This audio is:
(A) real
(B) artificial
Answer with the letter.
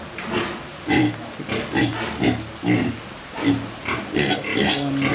A